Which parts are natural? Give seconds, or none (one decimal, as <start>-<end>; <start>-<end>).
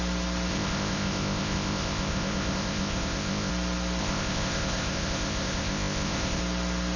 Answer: 0.0-0.5; 3.5-4.0; 6.4-7.0